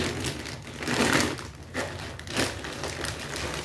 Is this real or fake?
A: real